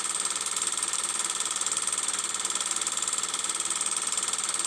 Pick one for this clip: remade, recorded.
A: recorded